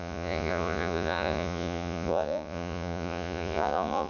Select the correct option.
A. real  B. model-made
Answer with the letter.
B